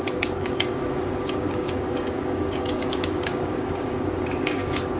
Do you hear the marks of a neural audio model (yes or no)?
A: yes